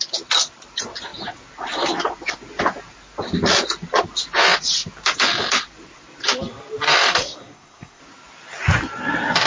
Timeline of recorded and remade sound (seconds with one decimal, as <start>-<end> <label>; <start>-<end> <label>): 0.0-7.2 recorded; 7.2-8.0 remade; 8.0-9.5 recorded